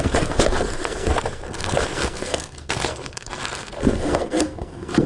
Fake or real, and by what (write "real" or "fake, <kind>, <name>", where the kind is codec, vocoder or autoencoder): fake, codec, SNAC